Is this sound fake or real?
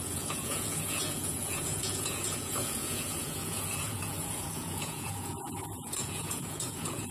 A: fake